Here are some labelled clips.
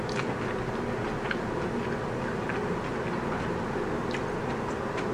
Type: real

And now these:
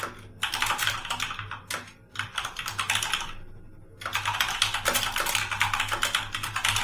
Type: real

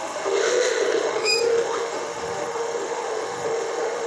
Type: fake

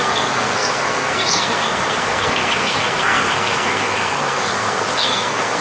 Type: fake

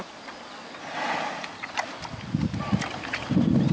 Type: real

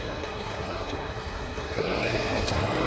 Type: fake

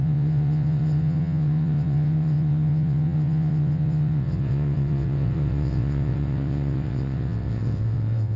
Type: fake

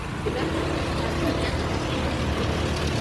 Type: real